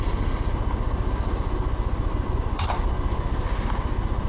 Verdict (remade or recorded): recorded